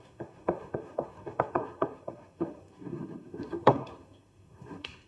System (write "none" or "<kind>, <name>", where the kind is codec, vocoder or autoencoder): codec, SNAC